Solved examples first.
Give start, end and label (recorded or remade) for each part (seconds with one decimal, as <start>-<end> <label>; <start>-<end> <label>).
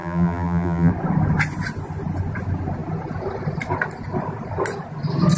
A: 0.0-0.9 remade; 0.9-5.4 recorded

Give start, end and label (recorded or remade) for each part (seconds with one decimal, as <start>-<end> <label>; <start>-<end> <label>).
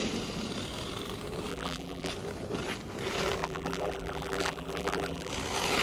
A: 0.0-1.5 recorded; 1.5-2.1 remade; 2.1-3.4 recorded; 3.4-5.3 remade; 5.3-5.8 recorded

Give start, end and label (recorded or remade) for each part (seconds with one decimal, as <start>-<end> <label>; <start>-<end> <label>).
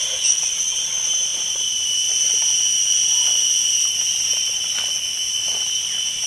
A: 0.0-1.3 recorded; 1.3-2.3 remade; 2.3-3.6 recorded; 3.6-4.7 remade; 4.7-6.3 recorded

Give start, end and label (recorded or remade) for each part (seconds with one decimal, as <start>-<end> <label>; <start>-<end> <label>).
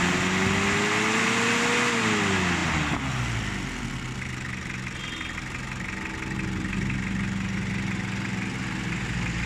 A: 0.0-9.5 recorded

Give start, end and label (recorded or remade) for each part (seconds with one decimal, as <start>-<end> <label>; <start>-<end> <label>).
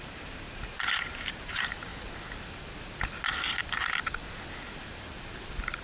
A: 0.0-1.9 remade; 1.9-4.5 recorded; 4.5-5.8 remade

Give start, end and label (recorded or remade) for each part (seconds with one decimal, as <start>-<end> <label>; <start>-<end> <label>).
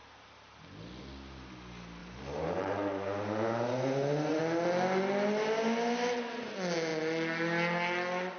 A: 0.0-2.0 recorded; 2.0-4.4 remade; 4.4-8.4 recorded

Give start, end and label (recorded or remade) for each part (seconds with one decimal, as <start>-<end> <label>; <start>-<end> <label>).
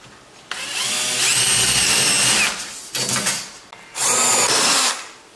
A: 0.0-4.0 recorded; 4.0-4.9 remade; 4.9-5.4 recorded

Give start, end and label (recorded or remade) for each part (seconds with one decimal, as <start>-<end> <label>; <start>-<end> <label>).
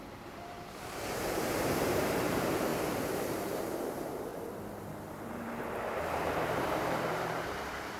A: 0.0-2.7 remade; 2.7-3.3 recorded; 3.3-4.3 remade; 4.3-5.1 recorded; 5.1-8.0 remade